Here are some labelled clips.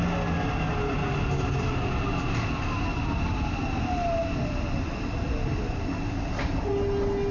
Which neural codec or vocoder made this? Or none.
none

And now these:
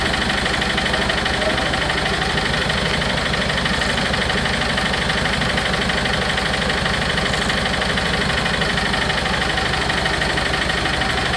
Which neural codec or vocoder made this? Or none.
none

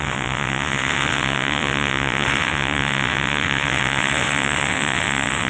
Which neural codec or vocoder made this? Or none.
vocoder, WaveNeXt